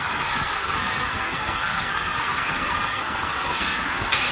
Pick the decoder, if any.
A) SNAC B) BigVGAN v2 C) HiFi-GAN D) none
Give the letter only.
A